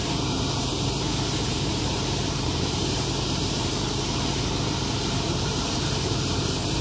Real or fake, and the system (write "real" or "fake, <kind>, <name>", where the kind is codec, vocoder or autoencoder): fake, vocoder, BigVGAN v2